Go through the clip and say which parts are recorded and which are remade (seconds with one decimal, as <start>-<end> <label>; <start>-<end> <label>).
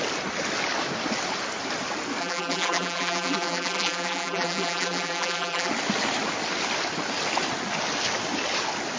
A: 0.0-2.2 recorded; 2.2-5.7 remade; 5.7-9.0 recorded